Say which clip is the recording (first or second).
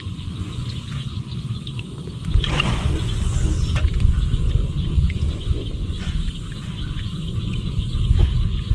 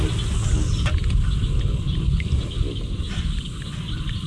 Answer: second